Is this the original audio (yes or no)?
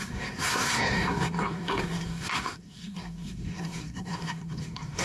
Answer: no